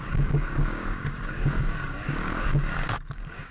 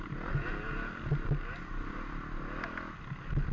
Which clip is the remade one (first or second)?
first